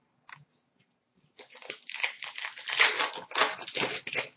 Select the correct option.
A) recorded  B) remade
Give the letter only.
A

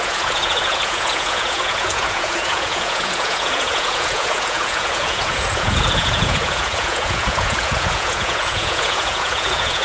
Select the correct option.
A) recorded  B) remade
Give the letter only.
B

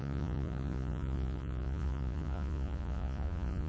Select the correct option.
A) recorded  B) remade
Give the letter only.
B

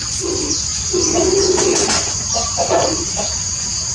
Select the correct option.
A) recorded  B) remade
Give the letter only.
B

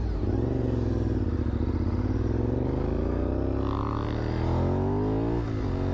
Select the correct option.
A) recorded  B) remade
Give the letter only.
A